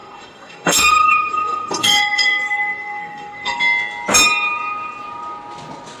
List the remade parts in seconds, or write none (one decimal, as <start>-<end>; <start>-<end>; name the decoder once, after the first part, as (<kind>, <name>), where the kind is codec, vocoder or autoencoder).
0.0-3.6 (codec, SNAC)